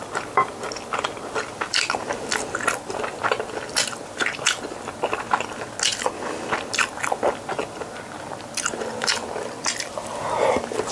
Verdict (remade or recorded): recorded